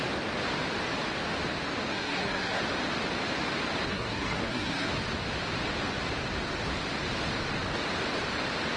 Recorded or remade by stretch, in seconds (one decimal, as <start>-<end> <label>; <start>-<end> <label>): 0.0-1.9 recorded; 1.9-2.6 remade; 2.6-3.9 recorded; 3.9-4.9 remade; 4.9-8.8 recorded